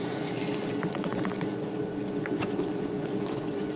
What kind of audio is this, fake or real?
fake